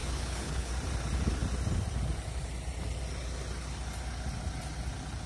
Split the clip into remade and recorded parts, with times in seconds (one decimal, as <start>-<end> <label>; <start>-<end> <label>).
0.0-0.7 remade; 0.7-5.3 recorded